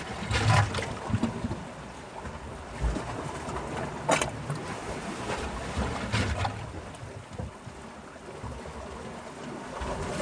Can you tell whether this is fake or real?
real